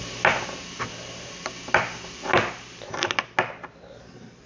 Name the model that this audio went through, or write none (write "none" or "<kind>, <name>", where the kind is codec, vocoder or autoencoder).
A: none